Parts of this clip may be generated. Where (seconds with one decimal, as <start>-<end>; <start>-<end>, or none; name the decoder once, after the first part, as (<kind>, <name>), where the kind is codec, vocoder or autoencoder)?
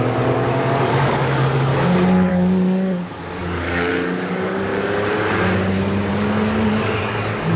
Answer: 0.0-1.7 (codec, DAC); 2.3-4.7; 6.1-7.6